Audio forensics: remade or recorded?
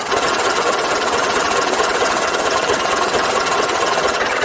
remade